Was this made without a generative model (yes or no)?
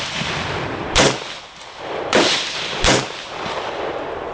no